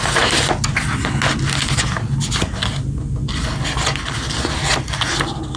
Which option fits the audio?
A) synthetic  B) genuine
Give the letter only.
B